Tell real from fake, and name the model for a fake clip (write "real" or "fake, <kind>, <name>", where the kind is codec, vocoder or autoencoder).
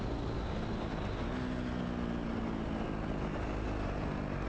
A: real